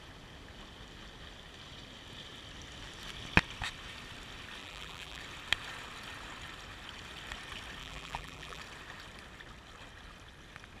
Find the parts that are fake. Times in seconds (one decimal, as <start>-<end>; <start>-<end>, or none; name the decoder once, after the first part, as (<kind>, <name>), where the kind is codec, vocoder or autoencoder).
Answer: 4.6-5.2 (vocoder, BigVGAN v2); 7.8-8.6